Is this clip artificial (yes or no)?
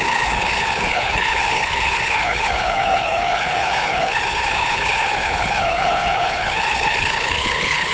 yes